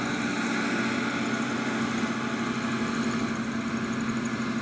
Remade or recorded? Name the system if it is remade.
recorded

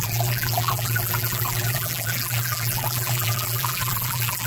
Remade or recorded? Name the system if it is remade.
remade, vocoder, BigVGAN v2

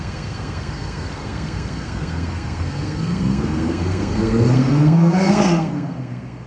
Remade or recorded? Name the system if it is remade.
remade, codec, SNAC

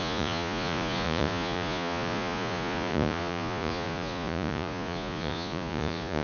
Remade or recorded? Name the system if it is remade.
remade, vocoder, Vocos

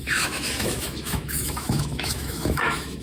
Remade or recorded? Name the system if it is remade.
remade, autoencoder, DAC-VAE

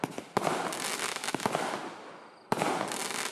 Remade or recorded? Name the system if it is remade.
recorded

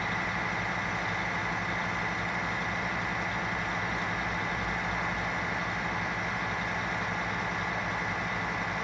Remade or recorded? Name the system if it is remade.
recorded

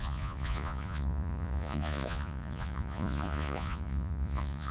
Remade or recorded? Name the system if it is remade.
remade, vocoder, Vocos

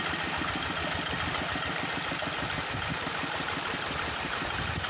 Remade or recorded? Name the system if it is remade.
recorded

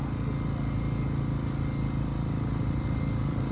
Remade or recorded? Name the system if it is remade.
recorded